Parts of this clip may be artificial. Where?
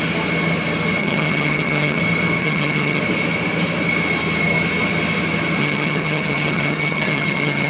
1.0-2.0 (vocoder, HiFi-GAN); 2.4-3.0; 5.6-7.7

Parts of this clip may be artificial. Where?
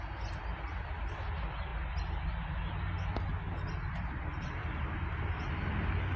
none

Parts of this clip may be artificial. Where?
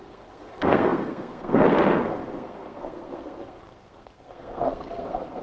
0.0-5.4 (codec, SNAC)